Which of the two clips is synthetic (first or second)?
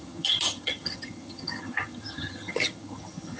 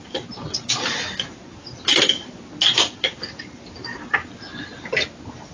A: first